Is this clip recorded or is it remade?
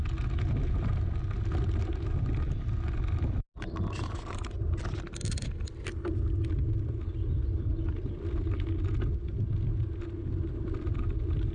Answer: recorded